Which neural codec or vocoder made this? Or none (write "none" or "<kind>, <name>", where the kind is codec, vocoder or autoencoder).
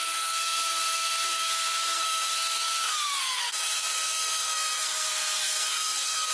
codec, SNAC